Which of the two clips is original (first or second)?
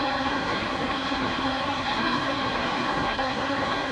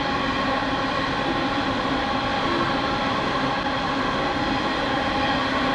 second